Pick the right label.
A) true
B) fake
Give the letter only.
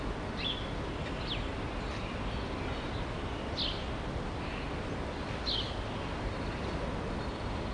A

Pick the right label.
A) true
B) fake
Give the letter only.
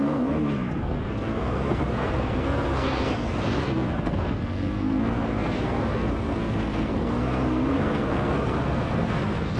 B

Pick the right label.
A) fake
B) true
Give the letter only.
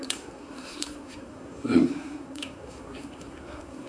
A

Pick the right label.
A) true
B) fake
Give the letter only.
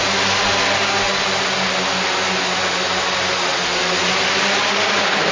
A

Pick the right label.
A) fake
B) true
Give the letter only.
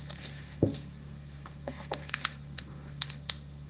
A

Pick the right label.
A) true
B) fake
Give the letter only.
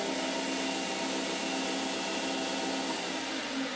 A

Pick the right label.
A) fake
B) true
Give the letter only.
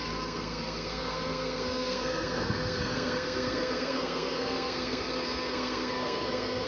A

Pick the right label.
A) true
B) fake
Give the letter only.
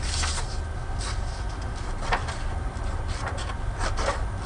A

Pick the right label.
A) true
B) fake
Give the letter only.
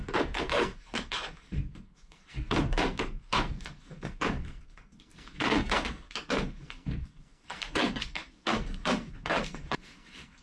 B